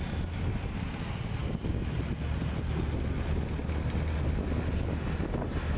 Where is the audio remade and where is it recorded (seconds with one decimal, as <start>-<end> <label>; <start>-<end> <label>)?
0.0-5.8 recorded